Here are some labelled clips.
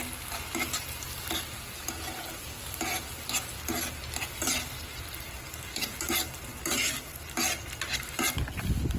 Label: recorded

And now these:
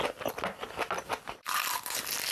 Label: recorded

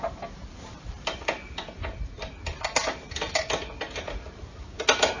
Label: recorded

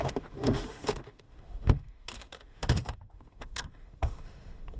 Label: remade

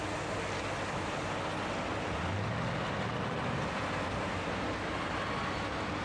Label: recorded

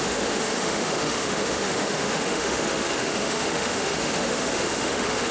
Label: remade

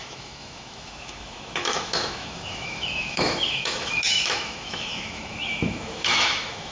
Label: remade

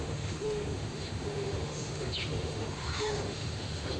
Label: remade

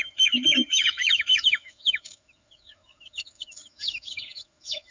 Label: remade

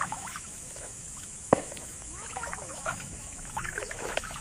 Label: remade